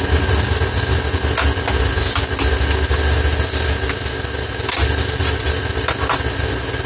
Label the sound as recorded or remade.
recorded